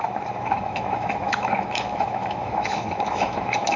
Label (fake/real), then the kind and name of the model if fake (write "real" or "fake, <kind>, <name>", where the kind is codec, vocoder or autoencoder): fake, autoencoder, DAC-VAE